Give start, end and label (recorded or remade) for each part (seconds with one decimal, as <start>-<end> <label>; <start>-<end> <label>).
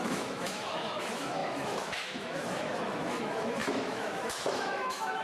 0.0-5.2 remade